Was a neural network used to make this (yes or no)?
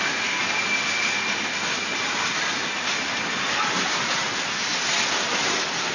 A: no